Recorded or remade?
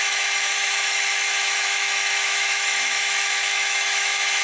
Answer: remade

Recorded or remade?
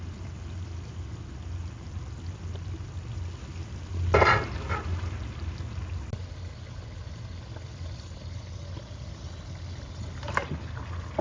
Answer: recorded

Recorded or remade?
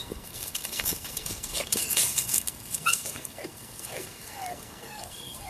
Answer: remade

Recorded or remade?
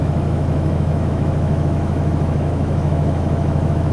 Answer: remade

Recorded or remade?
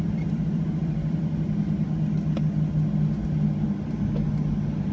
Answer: recorded